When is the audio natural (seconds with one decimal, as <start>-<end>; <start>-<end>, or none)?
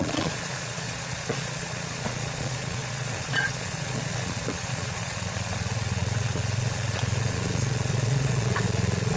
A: none